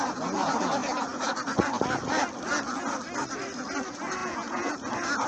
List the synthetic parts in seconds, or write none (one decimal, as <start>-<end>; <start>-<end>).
4.2-4.7